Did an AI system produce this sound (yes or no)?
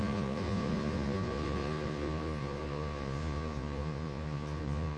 yes